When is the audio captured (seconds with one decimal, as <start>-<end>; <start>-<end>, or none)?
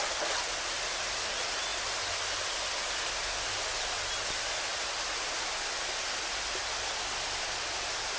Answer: 0.0-8.2